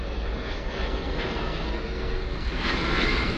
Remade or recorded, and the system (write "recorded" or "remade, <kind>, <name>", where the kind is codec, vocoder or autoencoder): remade, codec, SNAC